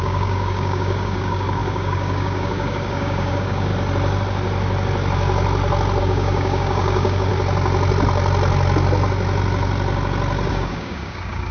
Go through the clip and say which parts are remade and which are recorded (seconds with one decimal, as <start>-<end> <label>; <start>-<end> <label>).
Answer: 0.0-3.7 remade; 3.7-6.0 recorded; 6.0-7.3 remade; 7.3-10.5 recorded; 10.5-11.5 remade